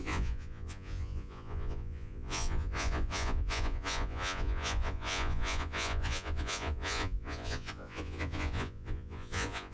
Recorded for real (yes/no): no